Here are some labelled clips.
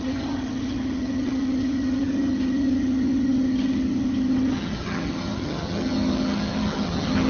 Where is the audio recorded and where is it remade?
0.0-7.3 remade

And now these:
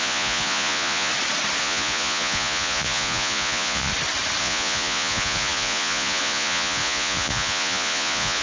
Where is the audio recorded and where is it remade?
0.0-1.1 remade; 1.1-1.6 recorded; 1.6-3.9 remade; 3.9-4.4 recorded; 4.4-8.4 remade